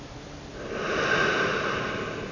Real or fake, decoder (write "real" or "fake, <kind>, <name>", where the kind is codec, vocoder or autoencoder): real